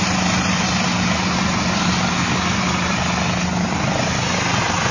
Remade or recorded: recorded